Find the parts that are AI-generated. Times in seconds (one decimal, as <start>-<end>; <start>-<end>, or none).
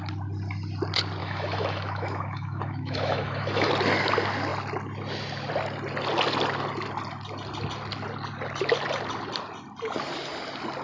1.2-3.7